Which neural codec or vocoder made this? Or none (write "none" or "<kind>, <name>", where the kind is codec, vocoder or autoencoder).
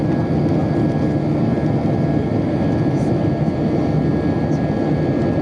none